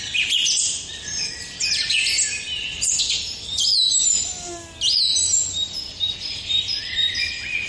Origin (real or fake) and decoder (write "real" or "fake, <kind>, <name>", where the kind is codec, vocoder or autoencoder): real